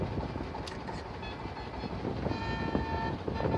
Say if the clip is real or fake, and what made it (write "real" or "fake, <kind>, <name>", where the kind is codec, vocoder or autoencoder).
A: real